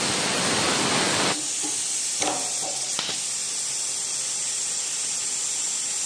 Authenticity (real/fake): real